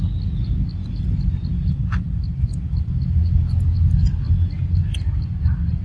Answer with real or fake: real